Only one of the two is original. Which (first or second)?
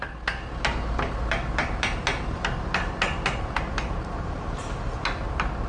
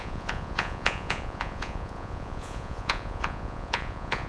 first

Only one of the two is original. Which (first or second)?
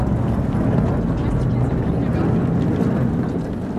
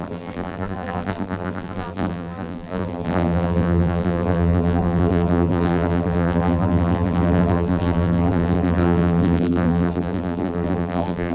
first